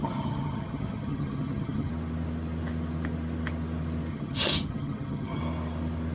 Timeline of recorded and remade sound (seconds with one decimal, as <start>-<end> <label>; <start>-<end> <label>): 0.0-1.9 remade; 1.9-4.1 recorded; 4.1-5.4 remade; 5.4-6.1 recorded